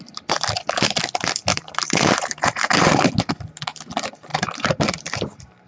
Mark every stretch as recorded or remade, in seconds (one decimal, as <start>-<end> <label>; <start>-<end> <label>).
0.0-1.5 recorded; 1.5-3.1 remade; 3.1-4.3 recorded; 4.3-5.7 remade